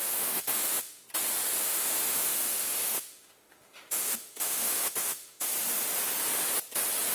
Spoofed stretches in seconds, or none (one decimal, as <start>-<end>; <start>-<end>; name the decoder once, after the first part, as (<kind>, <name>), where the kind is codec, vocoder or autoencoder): 0.0-1.0 (autoencoder, DAC-VAE); 1.6-5.5